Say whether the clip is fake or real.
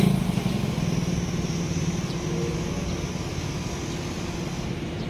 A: real